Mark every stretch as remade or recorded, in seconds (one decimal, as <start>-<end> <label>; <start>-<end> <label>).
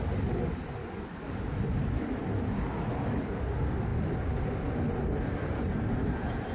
0.0-0.8 recorded; 0.8-1.4 remade; 1.4-2.9 recorded; 2.9-3.4 remade; 3.4-6.5 recorded